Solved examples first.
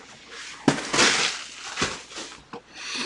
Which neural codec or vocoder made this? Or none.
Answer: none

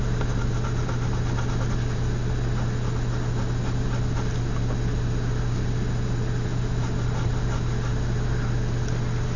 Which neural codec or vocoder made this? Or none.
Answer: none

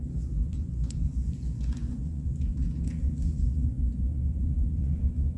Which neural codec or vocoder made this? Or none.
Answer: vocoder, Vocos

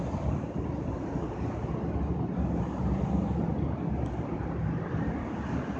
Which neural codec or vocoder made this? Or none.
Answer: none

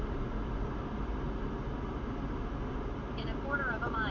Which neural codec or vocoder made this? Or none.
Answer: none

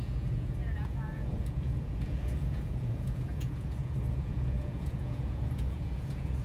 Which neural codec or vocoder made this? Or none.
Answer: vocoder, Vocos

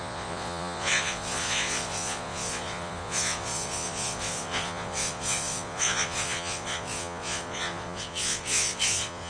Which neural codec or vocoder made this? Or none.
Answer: vocoder, Vocos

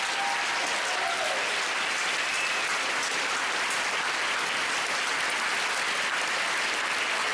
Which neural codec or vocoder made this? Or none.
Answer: none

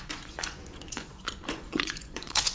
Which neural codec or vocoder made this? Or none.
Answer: vocoder, Vocos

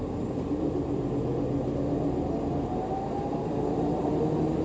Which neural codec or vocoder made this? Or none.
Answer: none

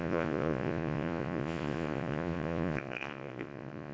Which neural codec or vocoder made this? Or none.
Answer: vocoder, Vocos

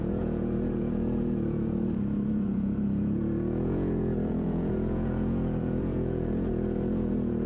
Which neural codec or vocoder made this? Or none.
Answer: vocoder, Vocos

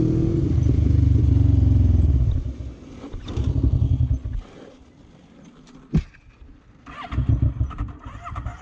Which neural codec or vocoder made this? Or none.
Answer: none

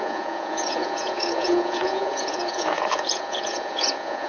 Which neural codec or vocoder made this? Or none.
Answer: vocoder, Vocos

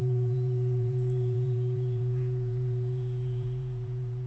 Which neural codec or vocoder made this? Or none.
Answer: vocoder, Vocos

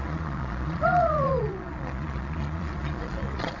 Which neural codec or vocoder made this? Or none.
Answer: vocoder, Vocos